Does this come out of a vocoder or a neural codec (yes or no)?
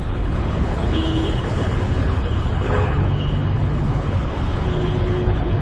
yes